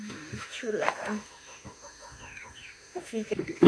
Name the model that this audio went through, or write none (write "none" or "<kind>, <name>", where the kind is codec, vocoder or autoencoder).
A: autoencoder, DAC-VAE